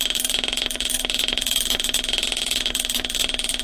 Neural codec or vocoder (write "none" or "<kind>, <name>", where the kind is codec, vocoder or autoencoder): vocoder, BigVGAN v2